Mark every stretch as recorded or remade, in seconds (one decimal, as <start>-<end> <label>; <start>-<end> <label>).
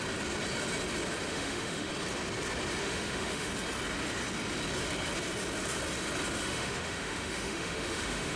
0.0-1.3 recorded; 1.3-1.9 remade; 1.9-2.8 recorded; 2.8-3.5 remade; 3.5-6.4 recorded; 6.4-8.4 remade